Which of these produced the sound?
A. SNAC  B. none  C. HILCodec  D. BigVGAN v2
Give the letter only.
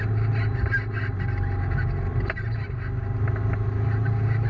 B